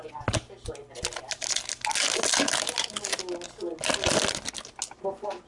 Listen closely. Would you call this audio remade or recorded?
recorded